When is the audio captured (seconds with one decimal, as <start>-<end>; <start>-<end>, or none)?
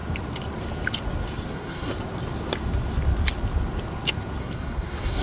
0.0-1.5; 1.9-4.4